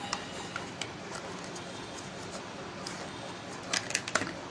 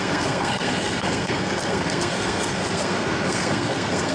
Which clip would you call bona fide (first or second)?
first